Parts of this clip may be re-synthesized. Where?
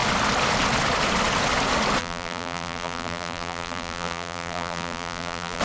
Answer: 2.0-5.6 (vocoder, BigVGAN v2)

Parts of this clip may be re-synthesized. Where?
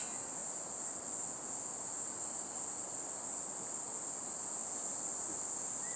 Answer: none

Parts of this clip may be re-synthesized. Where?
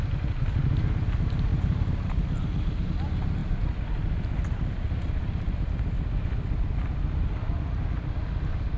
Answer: 3.4-7.6 (vocoder, BigVGAN v2)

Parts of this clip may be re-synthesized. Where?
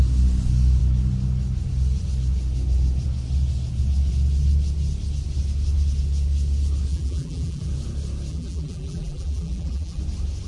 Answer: 6.9-7.7 (vocoder, BigVGAN v2); 8.3-10.0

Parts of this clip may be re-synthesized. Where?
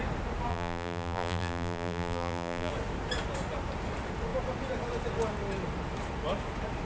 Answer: 0.5-2.7 (vocoder, BigVGAN v2)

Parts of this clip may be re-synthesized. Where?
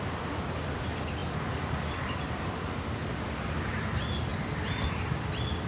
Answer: 4.3-4.9 (vocoder, BigVGAN v2)